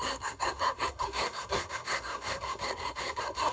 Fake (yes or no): yes